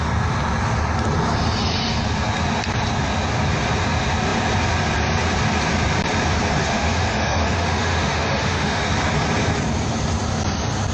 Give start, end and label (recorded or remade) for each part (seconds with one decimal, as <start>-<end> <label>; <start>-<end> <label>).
0.0-6.6 recorded; 6.6-8.8 remade; 8.8-10.9 recorded